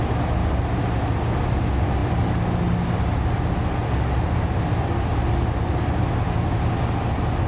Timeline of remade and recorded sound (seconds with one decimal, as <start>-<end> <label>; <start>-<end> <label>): 0.0-7.5 recorded